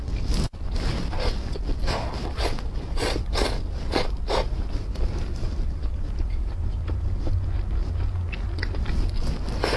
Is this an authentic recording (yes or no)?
yes